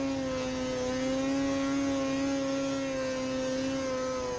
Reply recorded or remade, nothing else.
recorded